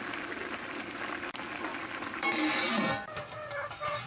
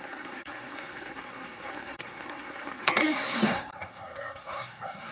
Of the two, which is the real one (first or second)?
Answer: first